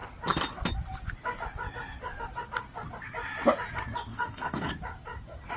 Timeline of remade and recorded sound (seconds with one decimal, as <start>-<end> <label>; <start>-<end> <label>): 0.0-4.1 recorded; 4.1-4.7 remade; 4.7-5.6 recorded